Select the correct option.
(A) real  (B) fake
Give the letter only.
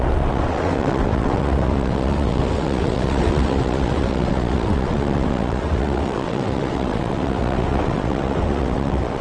B